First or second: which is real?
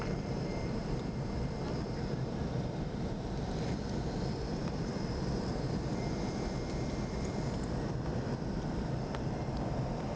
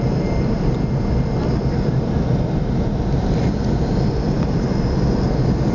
second